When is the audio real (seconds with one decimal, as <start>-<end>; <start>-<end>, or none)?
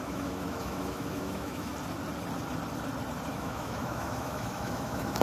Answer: 1.7-3.3